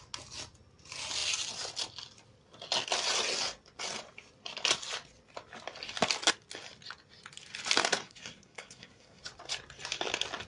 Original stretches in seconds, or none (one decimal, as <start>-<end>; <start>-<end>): 0.0-7.8; 9.2-10.5